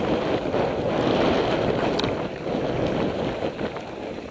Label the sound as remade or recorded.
recorded